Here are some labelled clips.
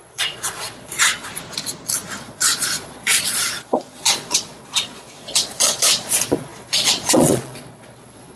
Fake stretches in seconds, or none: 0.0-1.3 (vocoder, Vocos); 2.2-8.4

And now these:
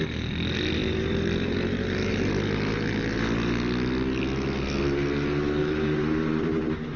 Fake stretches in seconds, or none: 5.6-7.0 (vocoder, BigVGAN v2)

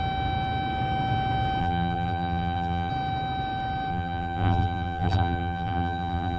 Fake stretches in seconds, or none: 1.6-2.9 (vocoder, BigVGAN v2); 3.9-6.4

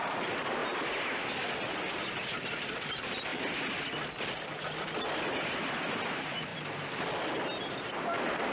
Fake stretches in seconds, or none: 0.0-0.6 (vocoder, BigVGAN v2); 1.7-3.3; 6.0-6.5; 7.8-8.5

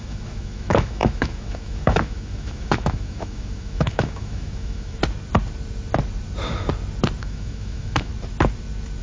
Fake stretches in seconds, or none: 0.0-5.0 (autoencoder, DAC-VAE); 7.2-8.1

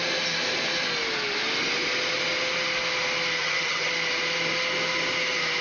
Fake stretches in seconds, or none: 3.4-3.9 (vocoder, HiFi-GAN)

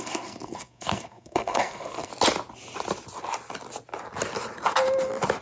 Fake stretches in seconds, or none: 0.0-2.1 (codec, SNAC)

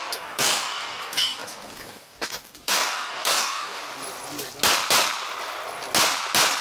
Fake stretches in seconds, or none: 0.0-3.8 (codec, DAC)